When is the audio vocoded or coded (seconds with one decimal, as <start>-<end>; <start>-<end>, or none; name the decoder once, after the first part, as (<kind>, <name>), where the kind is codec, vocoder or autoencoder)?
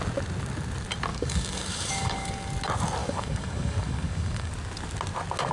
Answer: 1.1-2.5 (codec, DAC); 3.0-4.5